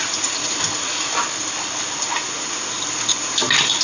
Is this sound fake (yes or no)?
no